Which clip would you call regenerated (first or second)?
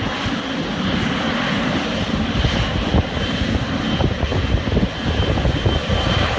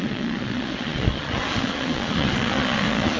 second